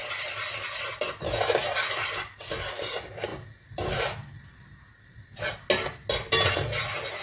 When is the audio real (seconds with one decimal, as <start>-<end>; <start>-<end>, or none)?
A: 0.0-3.3; 5.4-7.2